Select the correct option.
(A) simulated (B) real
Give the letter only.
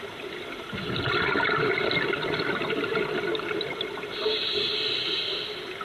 B